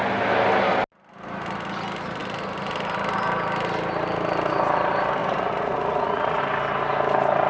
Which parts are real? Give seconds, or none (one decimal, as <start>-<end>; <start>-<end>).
0.0-5.2; 6.4-7.5